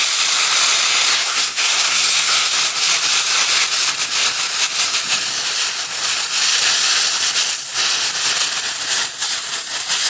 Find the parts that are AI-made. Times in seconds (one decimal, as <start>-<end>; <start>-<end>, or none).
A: 1.1-2.6